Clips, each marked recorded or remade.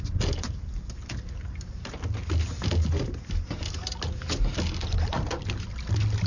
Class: recorded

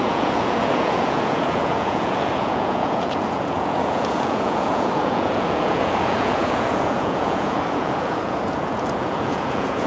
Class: remade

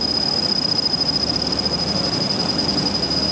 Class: recorded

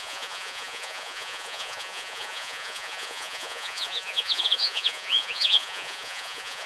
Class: remade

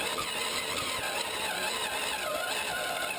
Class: recorded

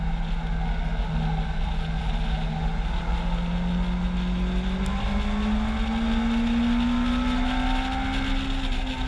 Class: recorded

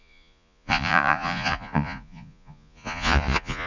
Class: remade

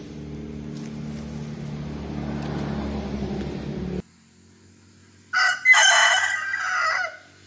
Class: recorded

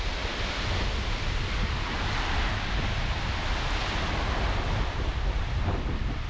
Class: recorded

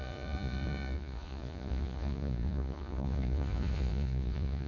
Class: remade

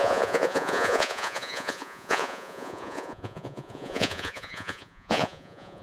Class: remade